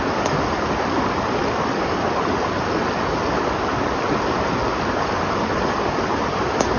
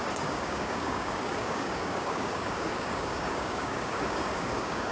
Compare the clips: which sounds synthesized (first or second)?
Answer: second